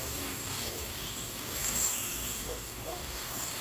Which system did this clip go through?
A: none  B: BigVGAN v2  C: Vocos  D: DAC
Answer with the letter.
D